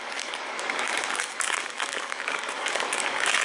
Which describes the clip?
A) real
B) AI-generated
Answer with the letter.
B